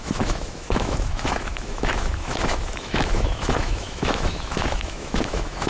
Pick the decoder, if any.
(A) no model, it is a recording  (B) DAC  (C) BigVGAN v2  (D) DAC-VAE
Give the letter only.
D